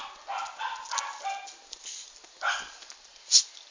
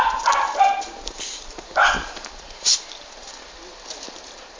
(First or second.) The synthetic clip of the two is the second